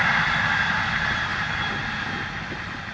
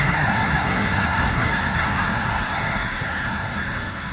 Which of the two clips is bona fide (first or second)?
first